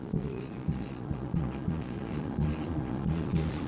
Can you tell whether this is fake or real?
fake